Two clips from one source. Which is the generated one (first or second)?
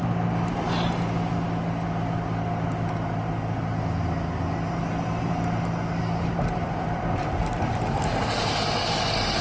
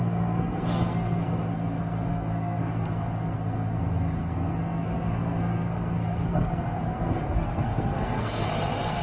second